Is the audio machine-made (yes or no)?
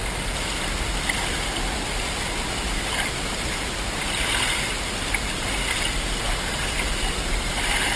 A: no